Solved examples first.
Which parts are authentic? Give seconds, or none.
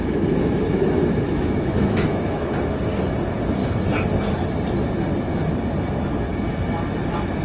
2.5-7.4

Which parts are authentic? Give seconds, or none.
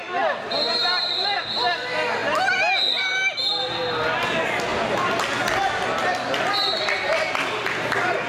0.0-8.3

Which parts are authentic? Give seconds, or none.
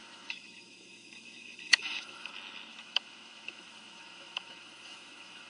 2.3-2.7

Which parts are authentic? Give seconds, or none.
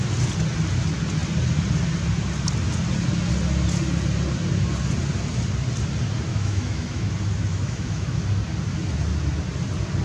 0.0-6.3; 7.1-7.5; 8.2-10.0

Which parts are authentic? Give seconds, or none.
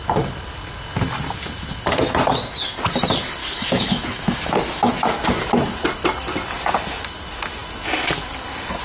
0.0-3.4; 4.9-8.8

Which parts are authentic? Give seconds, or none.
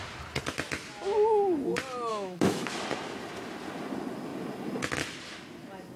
0.0-2.1; 2.7-6.0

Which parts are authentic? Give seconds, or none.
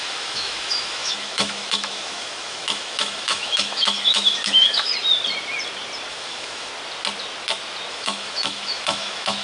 4.9-6.1; 6.7-7.9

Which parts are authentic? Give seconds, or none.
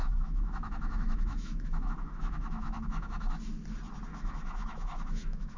3.4-4.1